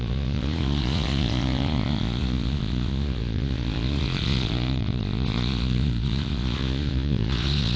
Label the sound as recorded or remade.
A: remade